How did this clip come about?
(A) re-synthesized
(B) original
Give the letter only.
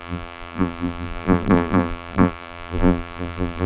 A